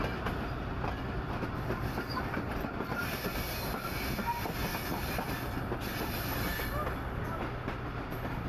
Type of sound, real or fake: real